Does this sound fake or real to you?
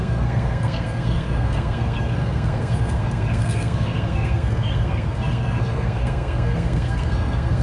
fake